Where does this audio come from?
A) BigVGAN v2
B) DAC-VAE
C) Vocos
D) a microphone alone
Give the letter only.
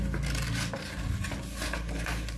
D